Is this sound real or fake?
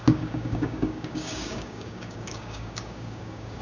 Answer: fake